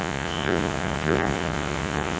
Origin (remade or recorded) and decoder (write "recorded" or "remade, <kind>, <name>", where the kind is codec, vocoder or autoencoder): remade, vocoder, Vocos